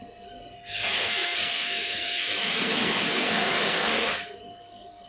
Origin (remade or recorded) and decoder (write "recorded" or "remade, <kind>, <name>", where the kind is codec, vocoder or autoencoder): remade, codec, SNAC